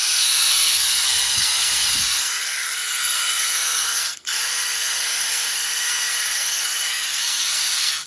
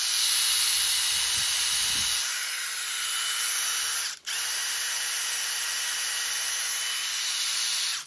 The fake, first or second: first